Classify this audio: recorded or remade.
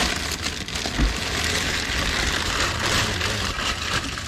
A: recorded